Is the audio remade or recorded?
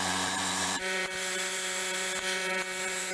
remade